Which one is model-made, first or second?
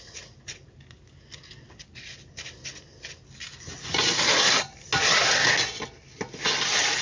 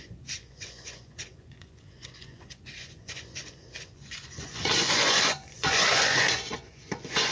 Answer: second